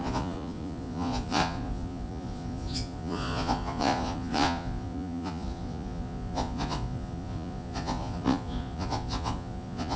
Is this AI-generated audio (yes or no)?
yes